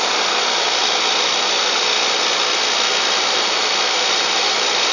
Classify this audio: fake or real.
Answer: real